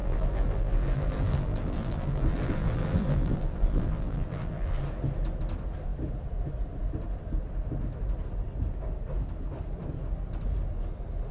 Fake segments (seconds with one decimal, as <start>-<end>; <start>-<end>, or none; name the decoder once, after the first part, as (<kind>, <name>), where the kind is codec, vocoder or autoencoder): 0.0-4.8 (vocoder, BigVGAN v2)